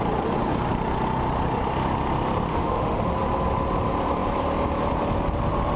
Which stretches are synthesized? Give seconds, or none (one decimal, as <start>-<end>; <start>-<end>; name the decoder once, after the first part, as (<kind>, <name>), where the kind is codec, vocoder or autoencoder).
2.5-3.1 (autoencoder, DAC-VAE)